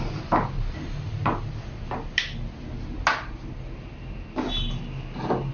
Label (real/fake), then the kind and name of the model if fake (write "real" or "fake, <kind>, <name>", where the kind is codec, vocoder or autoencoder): real